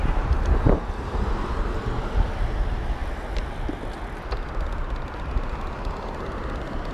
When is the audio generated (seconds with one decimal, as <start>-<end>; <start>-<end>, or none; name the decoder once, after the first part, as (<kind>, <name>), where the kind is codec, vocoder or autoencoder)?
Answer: 0.0-1.2 (vocoder, BigVGAN v2)

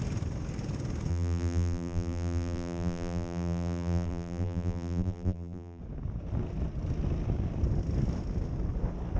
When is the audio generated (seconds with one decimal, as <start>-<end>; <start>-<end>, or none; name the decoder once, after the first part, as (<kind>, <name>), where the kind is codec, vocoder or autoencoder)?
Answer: 1.1-5.8 (vocoder, BigVGAN v2)

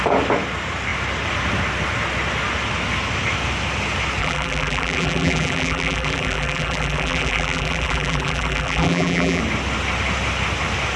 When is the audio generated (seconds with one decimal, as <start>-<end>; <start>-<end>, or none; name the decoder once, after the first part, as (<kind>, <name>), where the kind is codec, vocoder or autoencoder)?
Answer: 4.2-9.4 (vocoder, BigVGAN v2)

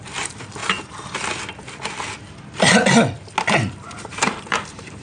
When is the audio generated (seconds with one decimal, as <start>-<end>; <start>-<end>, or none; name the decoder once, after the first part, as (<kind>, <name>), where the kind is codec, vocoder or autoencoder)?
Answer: 0.0-0.6 (vocoder, BigVGAN v2); 3.6-5.0

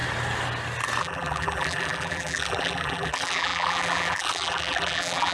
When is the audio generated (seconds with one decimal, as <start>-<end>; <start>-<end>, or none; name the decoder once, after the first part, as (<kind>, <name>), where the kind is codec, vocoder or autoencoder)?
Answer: 1.0-5.3 (vocoder, BigVGAN v2)

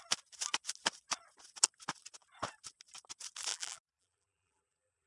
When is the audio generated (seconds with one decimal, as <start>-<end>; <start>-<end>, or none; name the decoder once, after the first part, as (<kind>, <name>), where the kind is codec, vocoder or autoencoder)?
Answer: 3.5-5.1 (vocoder, BigVGAN v2)